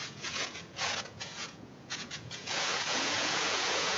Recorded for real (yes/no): no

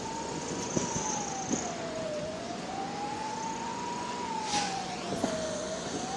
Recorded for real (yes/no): no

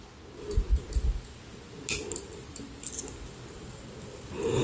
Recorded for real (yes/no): yes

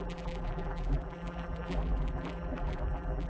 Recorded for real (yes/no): no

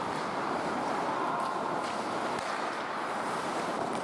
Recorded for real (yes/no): no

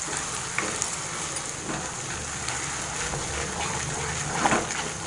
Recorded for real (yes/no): no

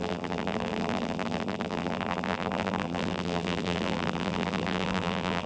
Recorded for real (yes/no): no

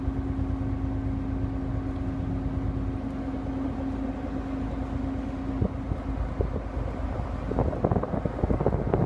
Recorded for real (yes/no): yes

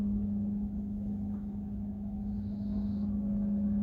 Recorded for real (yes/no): no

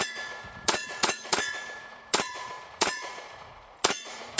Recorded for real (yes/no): no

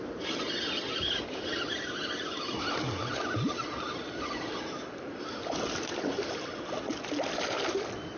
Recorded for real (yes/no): yes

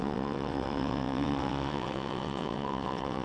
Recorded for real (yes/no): no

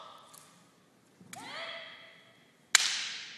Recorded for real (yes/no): yes